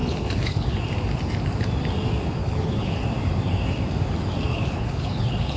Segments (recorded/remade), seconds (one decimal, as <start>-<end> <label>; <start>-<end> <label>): 0.0-0.8 remade; 0.8-2.4 recorded; 2.4-3.0 remade; 3.0-4.5 recorded; 4.5-5.6 remade